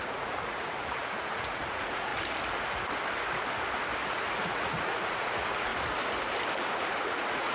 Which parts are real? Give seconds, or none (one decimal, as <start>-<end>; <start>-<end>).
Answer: 2.1-4.1; 5.7-6.6